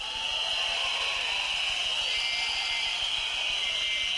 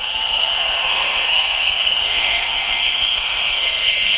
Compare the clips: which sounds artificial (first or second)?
second